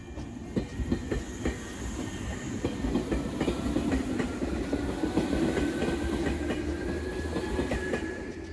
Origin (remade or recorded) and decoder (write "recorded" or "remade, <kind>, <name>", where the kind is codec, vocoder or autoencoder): recorded